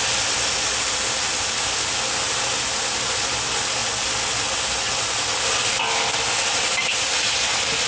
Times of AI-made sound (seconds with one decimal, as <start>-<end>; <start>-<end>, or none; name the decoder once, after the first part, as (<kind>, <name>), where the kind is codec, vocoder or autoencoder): none